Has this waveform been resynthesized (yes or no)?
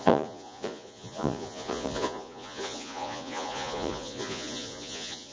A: yes